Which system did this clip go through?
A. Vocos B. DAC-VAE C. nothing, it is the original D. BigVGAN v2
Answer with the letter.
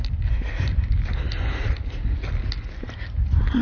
C